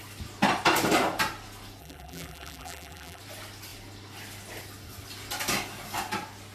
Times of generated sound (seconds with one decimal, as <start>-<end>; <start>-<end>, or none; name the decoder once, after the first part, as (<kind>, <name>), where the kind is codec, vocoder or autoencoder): 1.8-3.2 (vocoder, BigVGAN v2)